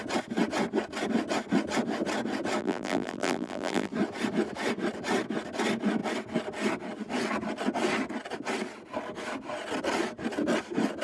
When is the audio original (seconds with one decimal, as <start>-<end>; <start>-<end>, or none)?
0.0-2.6; 3.9-11.0